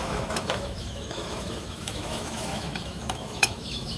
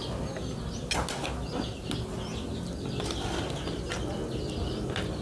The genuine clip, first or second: second